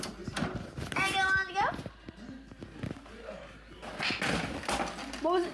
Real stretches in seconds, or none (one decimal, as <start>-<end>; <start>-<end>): 0.0-5.5